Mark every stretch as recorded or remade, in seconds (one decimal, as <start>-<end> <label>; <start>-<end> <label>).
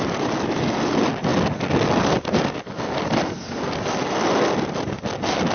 0.0-5.5 recorded